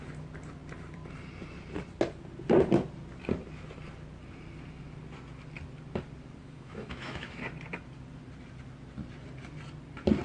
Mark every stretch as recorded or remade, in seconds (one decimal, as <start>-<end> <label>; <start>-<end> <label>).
0.0-6.4 recorded; 6.4-7.4 remade; 7.4-10.2 recorded